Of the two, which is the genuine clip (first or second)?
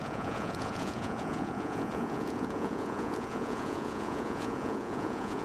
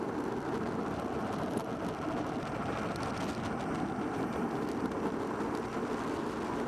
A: second